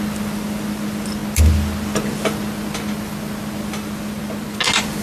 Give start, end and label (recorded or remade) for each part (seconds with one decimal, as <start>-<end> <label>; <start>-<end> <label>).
0.0-5.0 recorded